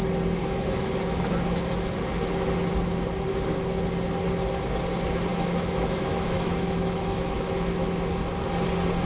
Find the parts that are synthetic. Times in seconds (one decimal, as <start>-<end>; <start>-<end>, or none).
0.4-1.3; 5.3-8.1